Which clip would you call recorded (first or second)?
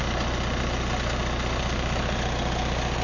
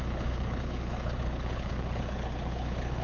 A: first